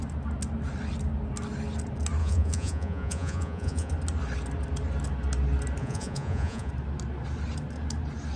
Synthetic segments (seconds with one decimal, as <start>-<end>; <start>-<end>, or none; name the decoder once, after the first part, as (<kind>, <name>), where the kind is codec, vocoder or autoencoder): 2.2-3.9 (vocoder, Vocos); 5.8-6.7

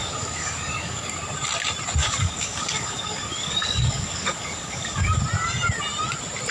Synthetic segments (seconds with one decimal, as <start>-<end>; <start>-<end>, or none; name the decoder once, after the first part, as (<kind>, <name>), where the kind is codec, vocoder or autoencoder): 0.0-1.1 (codec, DAC); 2.0-5.2

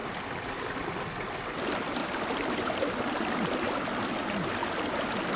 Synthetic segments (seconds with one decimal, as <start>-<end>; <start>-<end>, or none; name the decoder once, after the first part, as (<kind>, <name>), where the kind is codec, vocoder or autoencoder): 0.0-0.9 (vocoder, BigVGAN v2); 2.0-2.7; 4.6-5.4

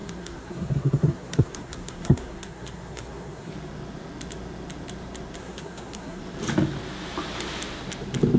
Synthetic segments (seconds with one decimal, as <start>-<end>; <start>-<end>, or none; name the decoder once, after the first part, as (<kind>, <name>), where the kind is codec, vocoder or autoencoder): 0.0-3.5 (codec, SNAC); 5.4-6.2